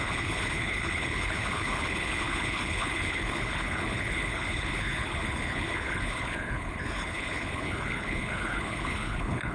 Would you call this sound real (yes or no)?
no